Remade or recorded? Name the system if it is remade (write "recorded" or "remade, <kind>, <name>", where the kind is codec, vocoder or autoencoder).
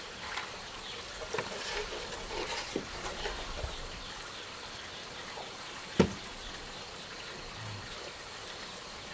recorded